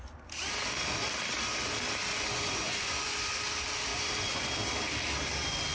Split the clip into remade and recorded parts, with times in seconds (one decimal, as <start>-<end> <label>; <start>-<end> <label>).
0.0-2.1 recorded; 2.1-3.4 remade; 3.4-3.9 recorded; 3.9-4.5 remade; 4.5-5.7 recorded